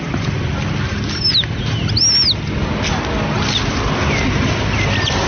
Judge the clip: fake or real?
real